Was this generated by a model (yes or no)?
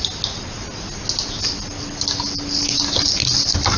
no